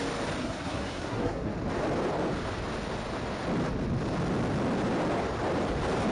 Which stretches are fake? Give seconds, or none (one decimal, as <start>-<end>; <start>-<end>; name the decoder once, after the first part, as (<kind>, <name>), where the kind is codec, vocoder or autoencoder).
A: 0.4-1.5 (codec, SNAC)